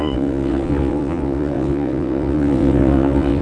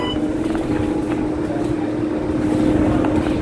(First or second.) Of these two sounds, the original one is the second